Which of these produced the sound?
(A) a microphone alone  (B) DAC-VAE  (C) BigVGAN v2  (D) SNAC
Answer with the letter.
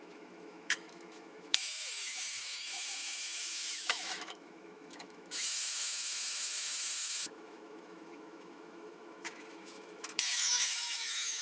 B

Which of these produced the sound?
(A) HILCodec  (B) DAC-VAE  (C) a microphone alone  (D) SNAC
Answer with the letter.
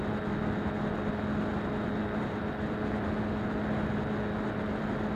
C